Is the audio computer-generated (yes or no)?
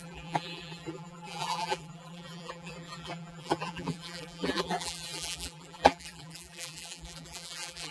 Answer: yes